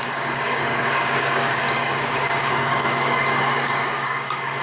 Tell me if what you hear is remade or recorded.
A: remade